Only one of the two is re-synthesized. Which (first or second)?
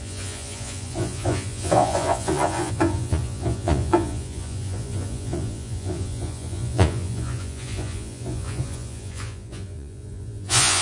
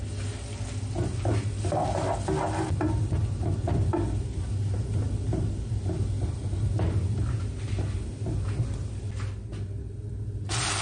first